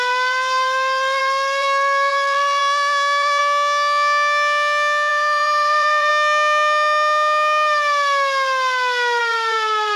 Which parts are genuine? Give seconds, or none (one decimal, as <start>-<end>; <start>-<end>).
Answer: 3.4-5.1; 6.1-9.2